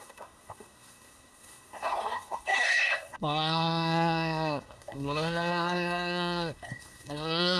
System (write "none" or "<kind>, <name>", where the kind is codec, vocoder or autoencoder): codec, SNAC